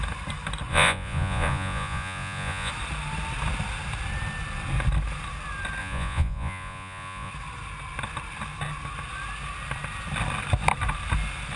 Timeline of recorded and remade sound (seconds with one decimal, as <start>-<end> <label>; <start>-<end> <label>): 0.0-0.7 recorded; 0.7-2.7 remade; 2.7-5.8 recorded; 5.8-7.3 remade; 7.3-11.6 recorded